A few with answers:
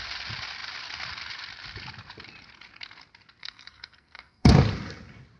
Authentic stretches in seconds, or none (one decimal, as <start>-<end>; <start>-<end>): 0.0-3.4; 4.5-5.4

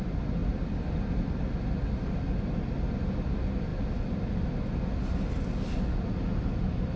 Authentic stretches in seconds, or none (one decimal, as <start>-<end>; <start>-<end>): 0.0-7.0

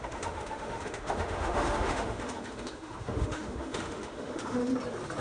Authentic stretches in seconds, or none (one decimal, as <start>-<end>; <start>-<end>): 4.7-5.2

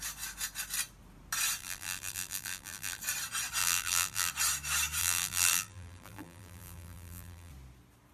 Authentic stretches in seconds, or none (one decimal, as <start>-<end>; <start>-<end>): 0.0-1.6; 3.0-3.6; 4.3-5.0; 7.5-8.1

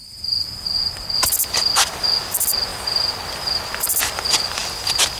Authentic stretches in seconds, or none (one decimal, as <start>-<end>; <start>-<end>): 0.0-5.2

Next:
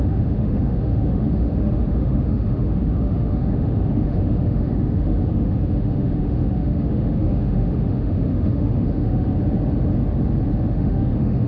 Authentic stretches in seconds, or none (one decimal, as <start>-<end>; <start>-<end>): 9.3-10.7

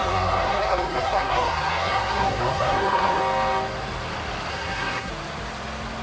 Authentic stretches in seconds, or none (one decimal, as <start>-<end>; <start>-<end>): 3.2-4.5; 5.1-6.0